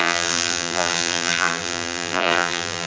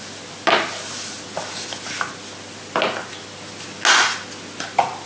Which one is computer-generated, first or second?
first